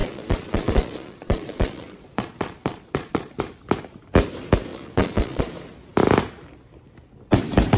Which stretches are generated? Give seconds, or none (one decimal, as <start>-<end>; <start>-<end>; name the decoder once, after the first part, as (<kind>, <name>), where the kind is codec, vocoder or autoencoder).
0.0-3.4 (vocoder, Vocos); 4.7-5.4